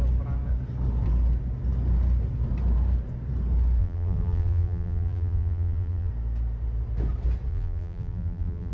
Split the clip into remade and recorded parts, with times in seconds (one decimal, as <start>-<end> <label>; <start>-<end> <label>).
0.0-3.8 recorded; 3.8-6.1 remade; 6.1-7.5 recorded; 7.5-8.7 remade